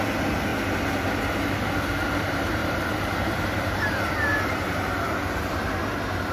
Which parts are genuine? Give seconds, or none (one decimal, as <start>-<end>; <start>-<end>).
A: 0.0-2.6; 5.6-6.3